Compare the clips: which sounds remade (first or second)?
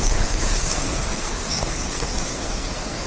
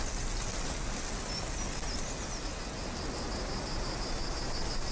first